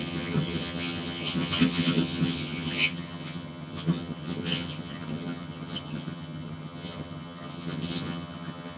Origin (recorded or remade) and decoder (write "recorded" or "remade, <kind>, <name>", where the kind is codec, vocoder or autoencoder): remade, vocoder, HiFi-GAN